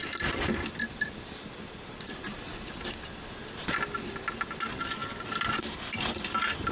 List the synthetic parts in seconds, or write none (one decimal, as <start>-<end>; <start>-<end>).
none